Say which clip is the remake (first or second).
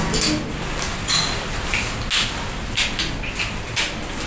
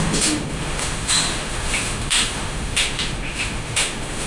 second